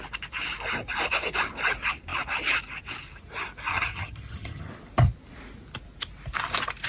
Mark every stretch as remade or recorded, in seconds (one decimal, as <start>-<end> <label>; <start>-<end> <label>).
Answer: 0.0-3.7 recorded; 3.7-4.7 remade; 4.7-6.9 recorded